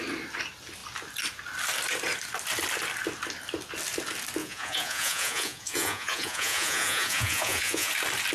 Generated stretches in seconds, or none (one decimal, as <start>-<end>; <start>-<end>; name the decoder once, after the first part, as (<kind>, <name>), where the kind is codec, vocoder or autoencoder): 4.4-7.9 (vocoder, Vocos)